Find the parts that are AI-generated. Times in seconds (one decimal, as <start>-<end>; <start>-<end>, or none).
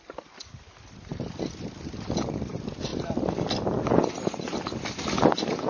none